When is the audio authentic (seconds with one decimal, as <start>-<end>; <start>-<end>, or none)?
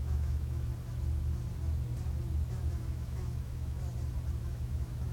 0.7-2.7; 3.8-4.4